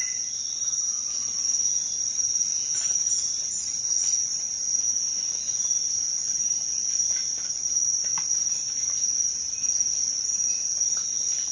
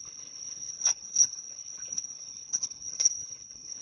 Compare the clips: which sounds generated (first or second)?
second